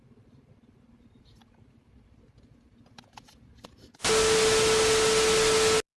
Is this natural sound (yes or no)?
yes